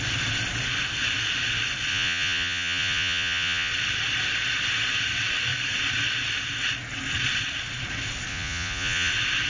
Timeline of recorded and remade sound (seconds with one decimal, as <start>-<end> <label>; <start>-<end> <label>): 0.0-1.9 recorded; 1.9-3.7 remade; 3.7-8.3 recorded; 8.3-9.1 remade; 9.1-9.5 recorded